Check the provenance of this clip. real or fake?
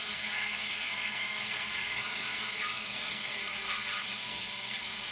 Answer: fake